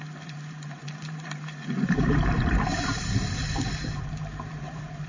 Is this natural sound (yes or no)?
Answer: no